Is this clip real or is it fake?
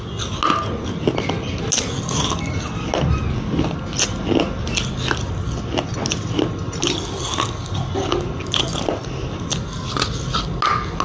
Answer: real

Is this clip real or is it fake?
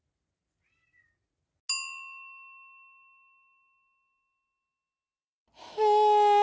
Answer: real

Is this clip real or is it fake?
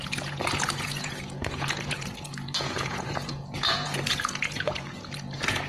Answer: fake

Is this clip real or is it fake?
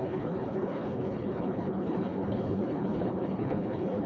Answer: fake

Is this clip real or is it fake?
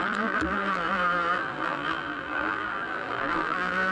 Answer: fake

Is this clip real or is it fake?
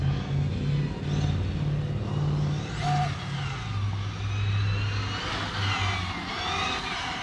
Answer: real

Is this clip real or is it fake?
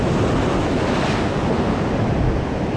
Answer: real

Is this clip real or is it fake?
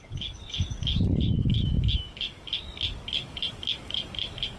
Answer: fake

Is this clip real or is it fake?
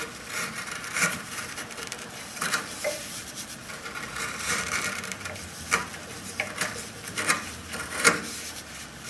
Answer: fake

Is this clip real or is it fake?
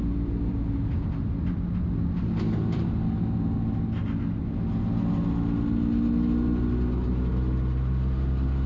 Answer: real